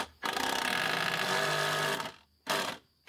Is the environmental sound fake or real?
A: real